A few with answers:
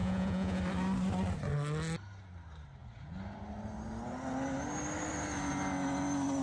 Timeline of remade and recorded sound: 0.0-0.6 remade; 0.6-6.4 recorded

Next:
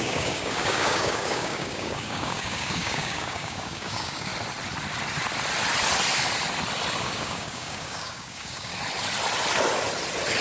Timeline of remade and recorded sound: 0.0-4.3 remade; 4.3-7.0 recorded; 7.0-8.7 remade; 8.7-10.4 recorded

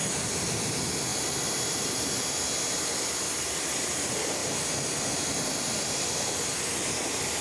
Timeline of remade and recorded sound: 0.0-1.1 remade; 1.1-3.4 recorded; 3.4-4.4 remade; 4.4-7.4 recorded

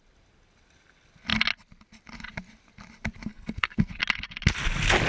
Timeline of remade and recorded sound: 0.0-3.3 recorded; 3.3-3.9 remade; 3.9-5.1 recorded

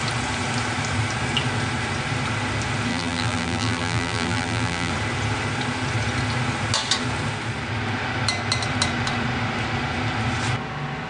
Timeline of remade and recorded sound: 0.0-2.9 recorded; 2.9-4.9 remade; 4.9-11.1 recorded

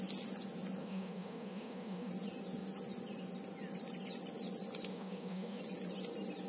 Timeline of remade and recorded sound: 0.0-0.8 recorded; 0.8-2.1 remade; 2.1-4.9 recorded; 4.9-5.6 remade; 5.6-6.5 recorded